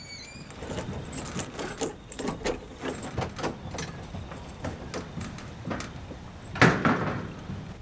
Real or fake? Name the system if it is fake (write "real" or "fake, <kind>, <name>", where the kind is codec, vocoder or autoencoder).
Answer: real